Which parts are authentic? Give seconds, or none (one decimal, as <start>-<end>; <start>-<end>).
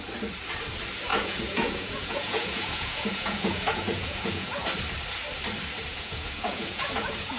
0.0-1.1; 4.6-5.9